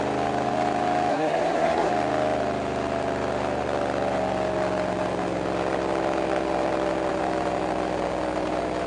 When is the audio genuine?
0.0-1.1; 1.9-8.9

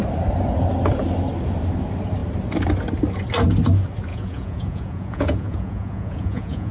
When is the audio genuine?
0.0-4.1

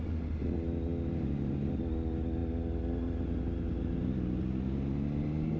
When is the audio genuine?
0.0-5.6

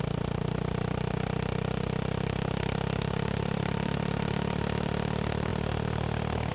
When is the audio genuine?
0.0-6.5

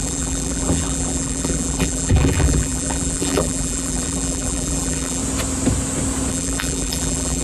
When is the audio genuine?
5.2-6.3